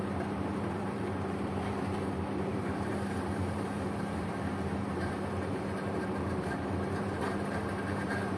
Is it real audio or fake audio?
fake